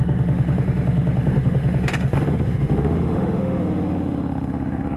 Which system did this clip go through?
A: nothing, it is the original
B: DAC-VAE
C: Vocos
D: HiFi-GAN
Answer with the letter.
B